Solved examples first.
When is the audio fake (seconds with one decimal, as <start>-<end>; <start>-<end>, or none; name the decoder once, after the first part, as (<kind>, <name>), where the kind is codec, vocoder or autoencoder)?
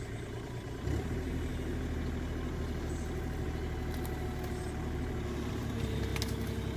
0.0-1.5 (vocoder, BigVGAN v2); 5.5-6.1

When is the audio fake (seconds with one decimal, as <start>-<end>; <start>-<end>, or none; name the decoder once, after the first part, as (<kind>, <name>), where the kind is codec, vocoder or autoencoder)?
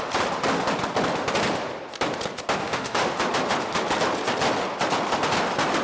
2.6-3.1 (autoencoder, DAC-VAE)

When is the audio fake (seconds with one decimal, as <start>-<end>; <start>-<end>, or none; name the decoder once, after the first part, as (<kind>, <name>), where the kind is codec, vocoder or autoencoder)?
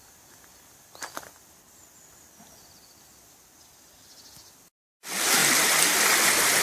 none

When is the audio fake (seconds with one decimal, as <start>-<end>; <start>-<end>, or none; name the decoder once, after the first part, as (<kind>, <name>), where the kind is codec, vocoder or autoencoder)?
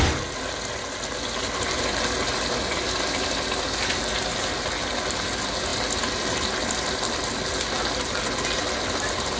none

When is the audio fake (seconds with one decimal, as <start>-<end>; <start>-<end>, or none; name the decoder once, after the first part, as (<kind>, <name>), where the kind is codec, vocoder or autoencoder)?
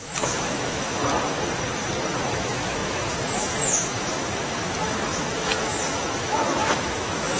0.0-1.0 (autoencoder, DAC-VAE); 2.3-7.4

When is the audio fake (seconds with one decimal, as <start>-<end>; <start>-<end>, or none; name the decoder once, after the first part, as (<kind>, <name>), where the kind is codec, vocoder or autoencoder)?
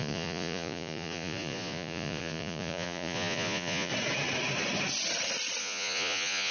0.0-3.9 (vocoder, Vocos); 5.6-6.5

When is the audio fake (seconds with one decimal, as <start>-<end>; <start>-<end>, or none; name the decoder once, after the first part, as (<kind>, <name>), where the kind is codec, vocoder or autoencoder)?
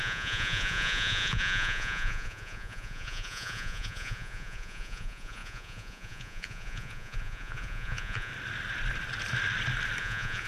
0.0-8.3 (vocoder, Vocos); 10.0-10.5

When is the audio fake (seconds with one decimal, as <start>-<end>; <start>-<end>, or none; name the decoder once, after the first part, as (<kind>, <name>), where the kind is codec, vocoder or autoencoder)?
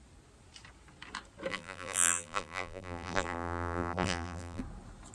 1.5-4.6 (vocoder, BigVGAN v2)